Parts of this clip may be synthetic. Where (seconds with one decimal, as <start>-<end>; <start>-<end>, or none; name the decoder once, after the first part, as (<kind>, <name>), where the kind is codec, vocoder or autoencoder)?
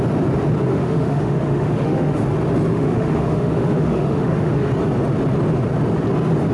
0.7-2.2 (autoencoder, DAC-VAE); 2.7-4.7